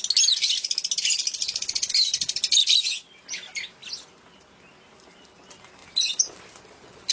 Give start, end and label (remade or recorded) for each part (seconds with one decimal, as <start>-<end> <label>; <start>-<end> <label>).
0.0-7.1 recorded